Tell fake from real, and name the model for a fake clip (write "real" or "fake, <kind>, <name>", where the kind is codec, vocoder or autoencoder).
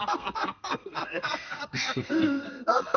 fake, codec, SNAC